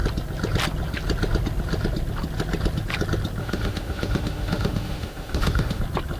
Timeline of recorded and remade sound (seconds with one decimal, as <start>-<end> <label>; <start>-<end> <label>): 0.0-3.4 recorded; 3.4-5.8 remade; 5.8-6.2 recorded